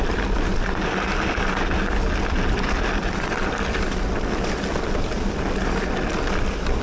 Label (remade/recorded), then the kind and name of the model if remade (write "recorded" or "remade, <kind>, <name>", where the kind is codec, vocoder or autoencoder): recorded